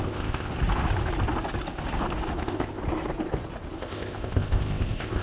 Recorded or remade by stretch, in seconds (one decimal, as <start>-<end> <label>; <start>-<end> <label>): 0.0-0.5 remade; 0.5-2.4 recorded; 2.4-2.8 remade; 2.8-3.8 recorded; 3.8-5.2 remade